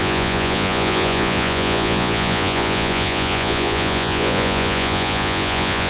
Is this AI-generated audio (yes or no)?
yes